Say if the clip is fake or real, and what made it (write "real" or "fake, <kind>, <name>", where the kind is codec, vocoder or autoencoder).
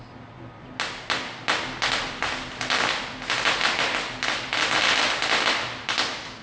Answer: real